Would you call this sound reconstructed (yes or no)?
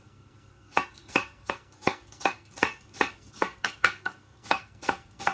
yes